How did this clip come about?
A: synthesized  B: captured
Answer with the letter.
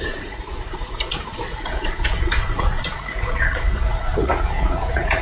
A